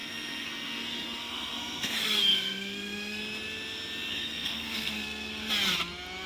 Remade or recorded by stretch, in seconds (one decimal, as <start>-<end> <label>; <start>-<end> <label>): 0.0-3.2 remade; 3.2-4.1 recorded; 4.1-5.5 remade; 5.5-6.3 recorded